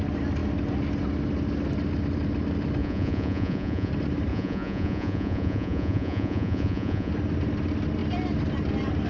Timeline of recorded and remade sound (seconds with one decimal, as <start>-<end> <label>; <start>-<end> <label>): 0.0-2.8 recorded; 2.8-3.9 remade; 3.9-4.3 recorded; 4.3-7.1 remade; 7.1-9.1 recorded